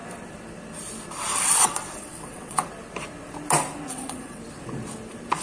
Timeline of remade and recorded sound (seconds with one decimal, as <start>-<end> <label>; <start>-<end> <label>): 0.0-1.3 recorded; 1.3-2.6 remade; 2.6-3.9 recorded; 3.9-4.4 remade; 4.4-5.4 recorded